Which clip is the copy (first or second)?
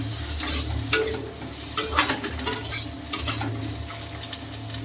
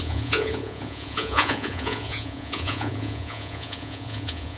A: second